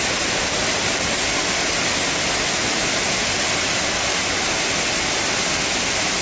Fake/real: real